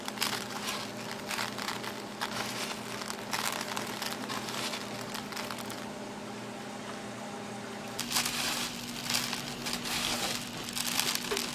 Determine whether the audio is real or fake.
real